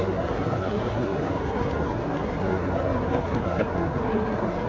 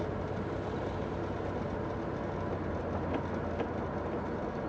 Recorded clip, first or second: second